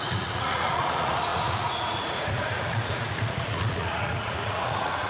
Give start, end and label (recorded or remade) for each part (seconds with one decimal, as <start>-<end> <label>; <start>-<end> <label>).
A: 0.0-5.1 remade